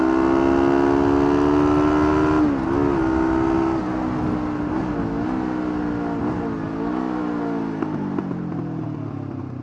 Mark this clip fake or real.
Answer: real